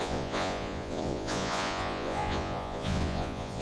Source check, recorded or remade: remade